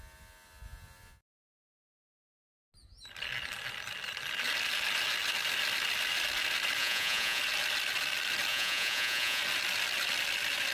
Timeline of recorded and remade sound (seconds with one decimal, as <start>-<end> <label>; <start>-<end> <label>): 0.0-6.8 recorded; 6.8-7.4 remade; 7.4-8.5 recorded; 8.5-9.4 remade; 9.4-10.7 recorded